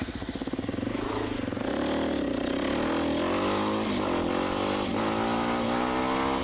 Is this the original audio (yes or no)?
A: yes